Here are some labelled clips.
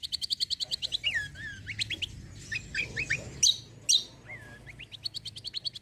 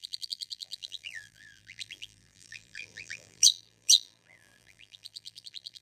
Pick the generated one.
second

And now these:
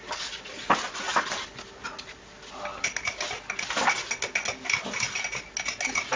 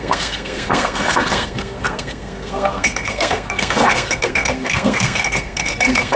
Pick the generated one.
second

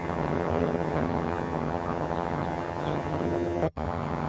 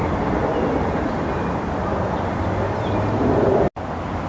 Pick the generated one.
first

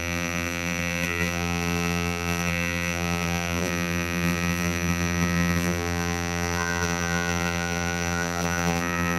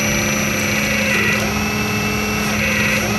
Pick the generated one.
first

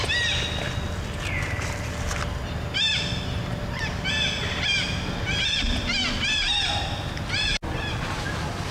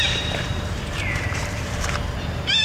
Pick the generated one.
second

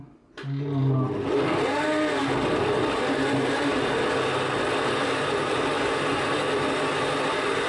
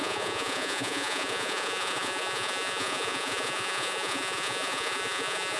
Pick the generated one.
second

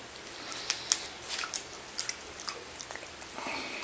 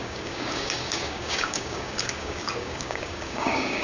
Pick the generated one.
second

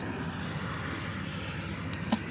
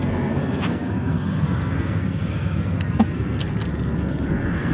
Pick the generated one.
second